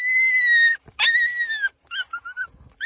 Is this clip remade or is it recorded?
recorded